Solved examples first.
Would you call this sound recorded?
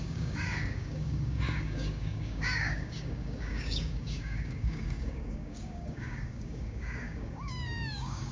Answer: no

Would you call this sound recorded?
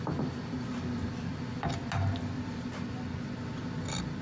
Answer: yes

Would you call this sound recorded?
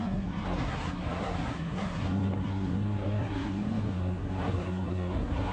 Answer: no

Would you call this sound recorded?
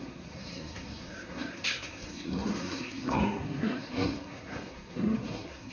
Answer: no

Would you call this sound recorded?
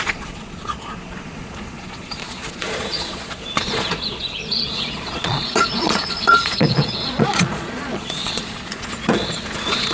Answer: no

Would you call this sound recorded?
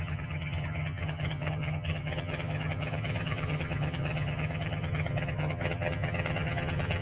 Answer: no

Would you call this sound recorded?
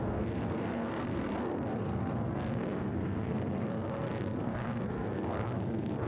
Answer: no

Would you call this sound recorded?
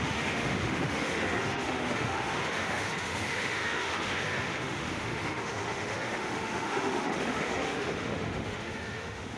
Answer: no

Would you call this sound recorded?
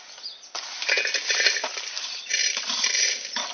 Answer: yes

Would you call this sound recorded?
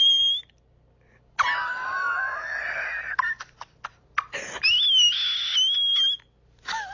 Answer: yes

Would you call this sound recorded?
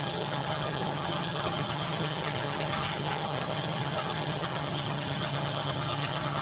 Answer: no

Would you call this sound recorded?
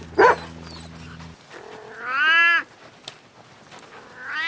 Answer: yes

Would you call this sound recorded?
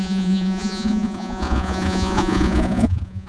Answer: no